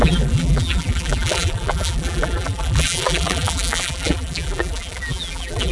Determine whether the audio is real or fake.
fake